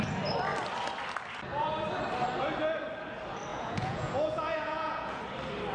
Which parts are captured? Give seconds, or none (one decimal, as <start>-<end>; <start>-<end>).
0.0-3.5; 5.2-5.7